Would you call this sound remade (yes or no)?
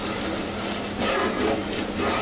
no